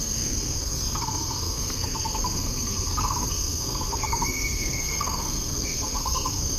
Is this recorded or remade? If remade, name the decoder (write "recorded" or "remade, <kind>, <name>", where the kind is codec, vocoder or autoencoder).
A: remade, codec, SNAC